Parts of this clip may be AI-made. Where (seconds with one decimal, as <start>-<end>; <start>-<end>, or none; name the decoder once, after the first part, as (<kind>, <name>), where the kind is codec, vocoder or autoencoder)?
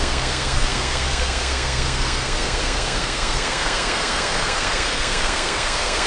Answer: 0.0-6.1 (codec, SNAC)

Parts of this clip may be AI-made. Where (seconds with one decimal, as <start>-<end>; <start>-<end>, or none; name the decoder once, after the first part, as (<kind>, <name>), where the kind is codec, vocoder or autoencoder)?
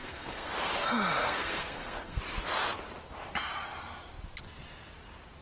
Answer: 0.0-0.5 (codec, SNAC); 1.2-2.2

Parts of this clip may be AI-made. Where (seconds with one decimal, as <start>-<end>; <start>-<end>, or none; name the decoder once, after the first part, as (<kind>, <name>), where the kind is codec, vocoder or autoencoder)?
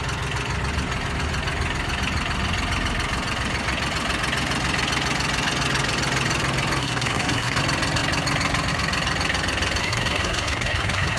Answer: 6.8-7.6 (codec, SNAC); 9.8-11.2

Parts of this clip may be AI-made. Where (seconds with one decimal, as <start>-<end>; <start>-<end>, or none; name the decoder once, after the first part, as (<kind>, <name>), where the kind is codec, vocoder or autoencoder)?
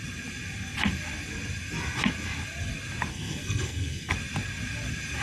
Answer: 3.1-4.1 (codec, SNAC)